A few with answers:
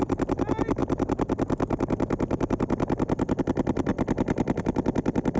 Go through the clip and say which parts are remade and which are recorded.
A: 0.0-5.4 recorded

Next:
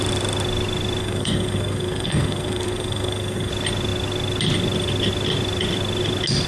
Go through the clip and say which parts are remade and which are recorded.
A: 0.0-1.0 recorded; 1.0-3.5 remade; 3.5-6.5 recorded

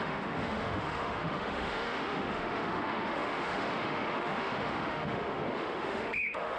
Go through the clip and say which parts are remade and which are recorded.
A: 0.0-6.6 remade

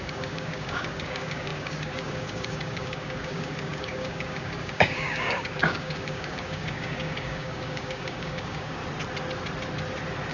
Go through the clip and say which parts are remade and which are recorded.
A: 0.0-8.8 remade; 8.8-10.3 recorded

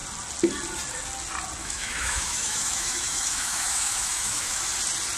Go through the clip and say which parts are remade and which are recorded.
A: 0.0-1.6 recorded; 1.6-4.7 remade; 4.7-5.2 recorded